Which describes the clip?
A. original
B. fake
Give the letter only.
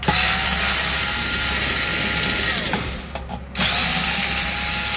A